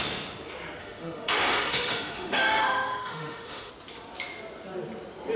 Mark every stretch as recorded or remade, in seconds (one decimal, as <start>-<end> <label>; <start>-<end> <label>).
0.0-0.8 recorded; 0.8-3.7 remade; 3.7-5.4 recorded